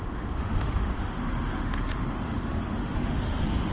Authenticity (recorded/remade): remade